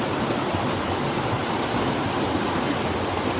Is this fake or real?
real